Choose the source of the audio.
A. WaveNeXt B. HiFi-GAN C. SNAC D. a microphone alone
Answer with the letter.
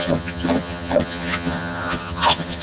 B